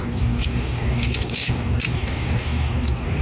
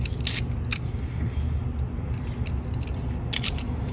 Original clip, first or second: second